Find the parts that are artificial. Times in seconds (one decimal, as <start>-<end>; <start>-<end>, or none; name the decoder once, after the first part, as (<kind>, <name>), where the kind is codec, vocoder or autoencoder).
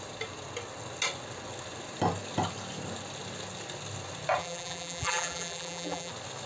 4.4-6.1 (vocoder, BigVGAN v2)